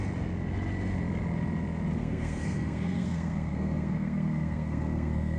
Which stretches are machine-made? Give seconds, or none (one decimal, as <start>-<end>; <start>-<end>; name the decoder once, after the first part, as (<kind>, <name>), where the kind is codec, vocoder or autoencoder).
2.0-5.4 (codec, SNAC)